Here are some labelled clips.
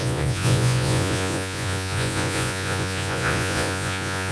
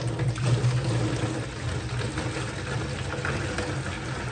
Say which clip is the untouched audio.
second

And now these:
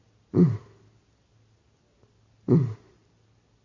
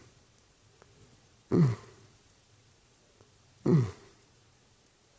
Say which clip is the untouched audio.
first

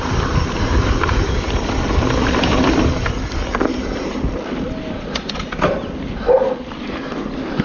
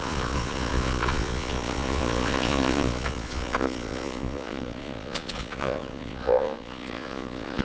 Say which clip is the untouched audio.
first